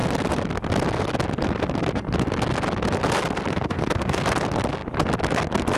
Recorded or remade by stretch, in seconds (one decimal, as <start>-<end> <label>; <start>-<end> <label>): 0.0-3.5 recorded; 3.5-4.2 remade; 4.2-5.8 recorded